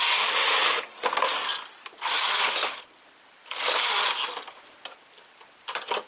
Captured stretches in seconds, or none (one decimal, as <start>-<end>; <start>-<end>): 0.0-6.1